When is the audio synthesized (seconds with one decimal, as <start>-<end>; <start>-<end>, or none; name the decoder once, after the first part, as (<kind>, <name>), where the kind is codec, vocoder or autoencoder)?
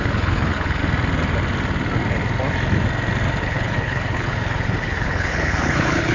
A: 0.0-0.8 (codec, HILCodec); 3.4-6.1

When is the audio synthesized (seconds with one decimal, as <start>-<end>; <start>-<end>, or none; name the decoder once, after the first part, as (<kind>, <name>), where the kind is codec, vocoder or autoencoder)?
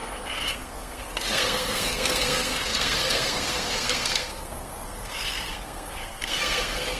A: 0.0-7.0 (codec, SNAC)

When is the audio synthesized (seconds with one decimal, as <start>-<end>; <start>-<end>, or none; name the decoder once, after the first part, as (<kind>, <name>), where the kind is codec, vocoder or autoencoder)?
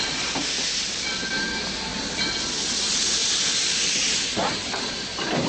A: 3.2-5.5 (vocoder, BigVGAN v2)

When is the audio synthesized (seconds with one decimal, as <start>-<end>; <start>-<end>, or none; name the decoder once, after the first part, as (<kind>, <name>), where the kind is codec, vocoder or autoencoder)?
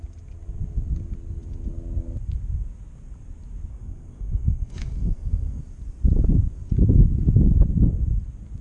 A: 3.7-5.6 (codec, SNAC)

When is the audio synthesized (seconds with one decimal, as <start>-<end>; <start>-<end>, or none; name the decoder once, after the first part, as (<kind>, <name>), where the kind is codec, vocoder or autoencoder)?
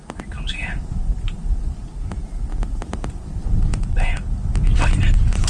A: 3.7-4.3 (vocoder, Vocos)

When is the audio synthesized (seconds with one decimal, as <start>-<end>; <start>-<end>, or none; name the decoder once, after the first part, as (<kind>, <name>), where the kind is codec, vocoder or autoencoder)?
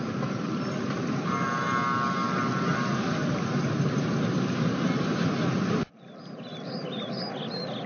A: none